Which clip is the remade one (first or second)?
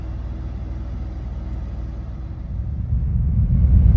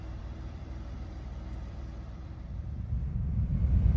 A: second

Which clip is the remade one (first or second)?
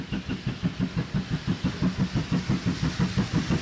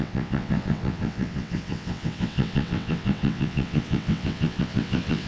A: second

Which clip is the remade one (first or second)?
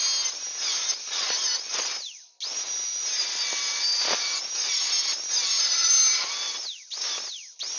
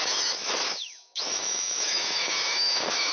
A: second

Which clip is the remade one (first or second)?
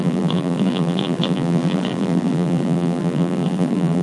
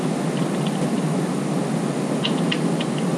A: first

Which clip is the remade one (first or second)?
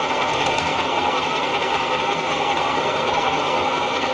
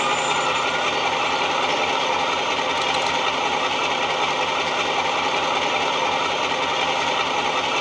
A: first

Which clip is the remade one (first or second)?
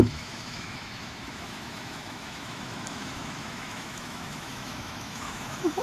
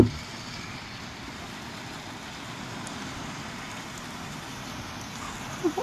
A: first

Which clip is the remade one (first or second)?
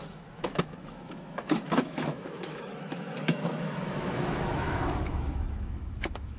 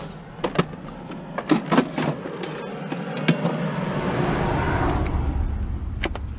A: first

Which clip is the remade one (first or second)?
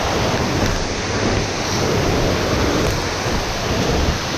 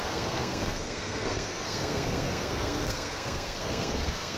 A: second